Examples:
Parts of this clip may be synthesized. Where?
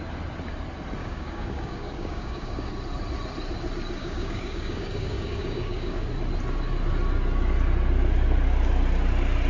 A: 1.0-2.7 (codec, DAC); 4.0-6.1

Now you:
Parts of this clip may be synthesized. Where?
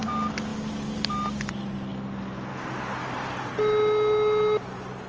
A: none